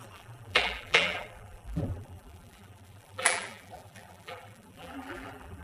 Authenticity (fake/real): fake